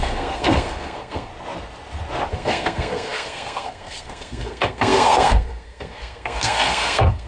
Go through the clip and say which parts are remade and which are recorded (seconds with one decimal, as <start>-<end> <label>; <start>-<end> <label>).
0.0-1.3 remade; 1.3-2.3 recorded; 2.3-7.3 remade